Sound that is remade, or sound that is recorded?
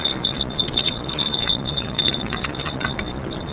remade